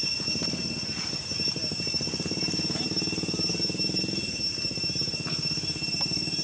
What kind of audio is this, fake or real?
real